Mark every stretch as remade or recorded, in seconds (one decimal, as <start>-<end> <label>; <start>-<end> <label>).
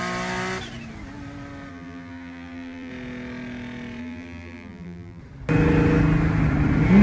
0.0-1.7 recorded; 1.7-2.9 remade; 2.9-4.0 recorded; 4.0-5.2 remade; 5.2-7.0 recorded